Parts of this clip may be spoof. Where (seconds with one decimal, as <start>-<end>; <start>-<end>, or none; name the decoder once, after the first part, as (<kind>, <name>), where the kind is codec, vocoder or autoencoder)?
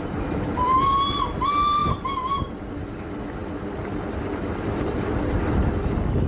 none